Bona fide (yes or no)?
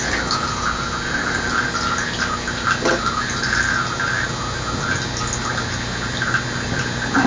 yes